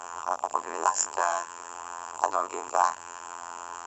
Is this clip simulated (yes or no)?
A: yes